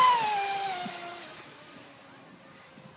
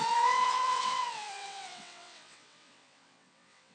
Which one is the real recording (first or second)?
first